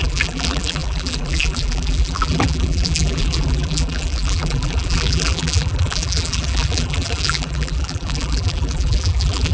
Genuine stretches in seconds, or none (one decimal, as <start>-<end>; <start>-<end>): none